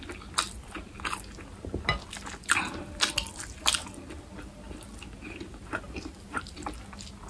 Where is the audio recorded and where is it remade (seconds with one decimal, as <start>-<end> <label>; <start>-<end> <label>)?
0.0-5.6 recorded; 5.6-6.6 remade; 6.6-7.3 recorded